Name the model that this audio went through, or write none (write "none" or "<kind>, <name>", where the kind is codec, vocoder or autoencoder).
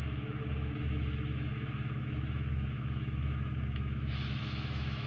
autoencoder, DAC-VAE